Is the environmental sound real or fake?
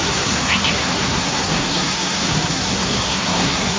fake